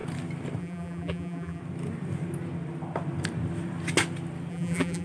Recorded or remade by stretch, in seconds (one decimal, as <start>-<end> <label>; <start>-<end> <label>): 0.0-0.6 recorded; 0.6-1.6 remade; 1.6-4.5 recorded; 4.5-5.0 remade